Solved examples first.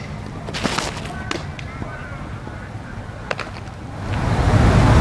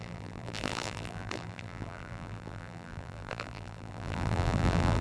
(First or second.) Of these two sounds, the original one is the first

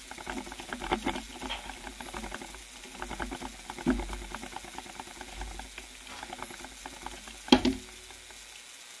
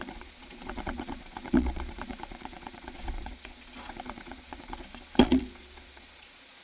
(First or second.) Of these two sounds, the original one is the first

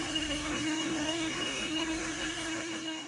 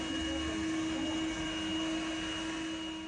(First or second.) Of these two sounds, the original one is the second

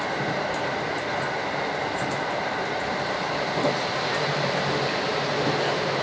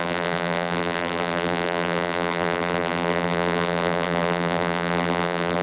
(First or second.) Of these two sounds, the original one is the first